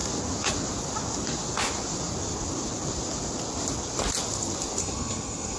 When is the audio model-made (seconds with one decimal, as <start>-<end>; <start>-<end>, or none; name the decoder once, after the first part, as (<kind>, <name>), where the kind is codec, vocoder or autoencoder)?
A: 4.8-5.6 (codec, SNAC)